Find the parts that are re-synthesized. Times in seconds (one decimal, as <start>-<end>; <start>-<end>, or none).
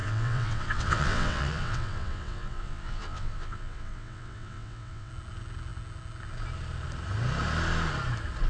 0.0-5.1